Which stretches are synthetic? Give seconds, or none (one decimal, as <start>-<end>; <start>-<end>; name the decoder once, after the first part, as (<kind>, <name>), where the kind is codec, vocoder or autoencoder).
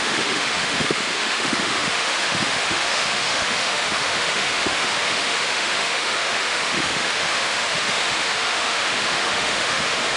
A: 0.0-10.2 (autoencoder, DAC-VAE)